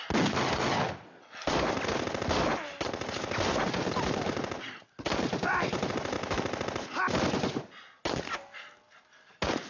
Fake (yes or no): no